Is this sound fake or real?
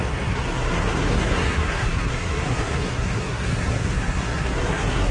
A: fake